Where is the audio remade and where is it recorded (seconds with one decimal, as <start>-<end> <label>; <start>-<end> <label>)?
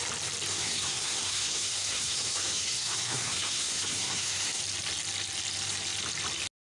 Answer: 0.0-0.5 recorded; 0.5-4.6 remade; 4.6-6.8 recorded